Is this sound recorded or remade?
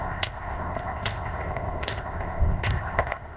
remade